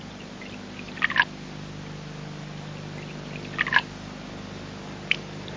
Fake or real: real